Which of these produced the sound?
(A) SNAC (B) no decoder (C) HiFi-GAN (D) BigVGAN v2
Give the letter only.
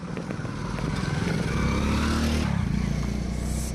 B